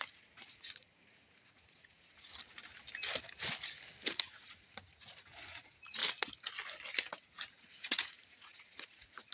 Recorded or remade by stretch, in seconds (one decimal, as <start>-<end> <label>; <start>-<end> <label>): 0.0-2.3 remade; 2.3-4.2 recorded; 4.2-6.0 remade; 6.0-7.1 recorded; 7.1-9.3 remade